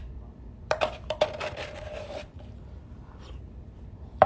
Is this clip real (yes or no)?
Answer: no